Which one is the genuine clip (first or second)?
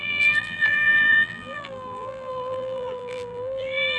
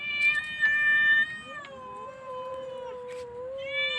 second